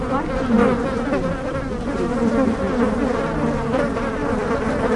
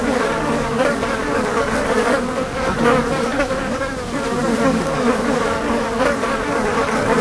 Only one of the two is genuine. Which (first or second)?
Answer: first